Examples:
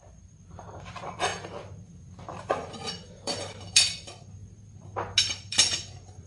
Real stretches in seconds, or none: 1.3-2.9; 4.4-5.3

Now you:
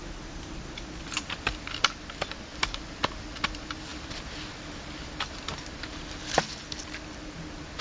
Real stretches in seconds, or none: 0.0-2.5; 3.2-7.8